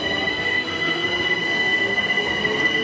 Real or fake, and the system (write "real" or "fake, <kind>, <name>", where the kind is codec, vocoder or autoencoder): fake, codec, SNAC